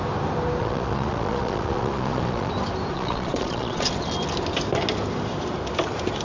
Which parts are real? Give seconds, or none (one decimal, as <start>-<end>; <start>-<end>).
0.0-0.6; 2.5-2.9; 3.9-6.2